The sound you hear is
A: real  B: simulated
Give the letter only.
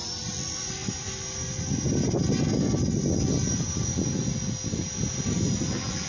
A